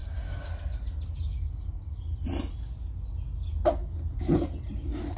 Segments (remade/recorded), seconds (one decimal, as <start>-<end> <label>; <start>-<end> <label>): 0.0-0.5 remade; 0.5-1.3 recorded; 1.3-2.0 remade; 2.0-5.2 recorded